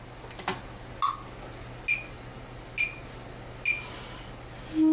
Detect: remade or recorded recorded